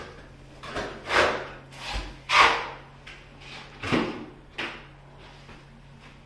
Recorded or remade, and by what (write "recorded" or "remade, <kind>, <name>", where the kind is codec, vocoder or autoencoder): recorded